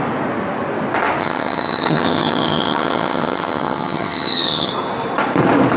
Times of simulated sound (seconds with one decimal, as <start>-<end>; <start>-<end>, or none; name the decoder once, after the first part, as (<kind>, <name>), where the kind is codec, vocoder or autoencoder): 1.2-4.7 (vocoder, HiFi-GAN)